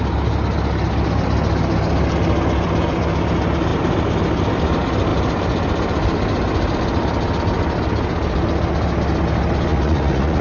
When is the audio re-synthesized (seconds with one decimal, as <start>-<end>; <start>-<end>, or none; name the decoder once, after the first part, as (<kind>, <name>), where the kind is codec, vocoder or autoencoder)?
9.7-10.4 (vocoder, Vocos)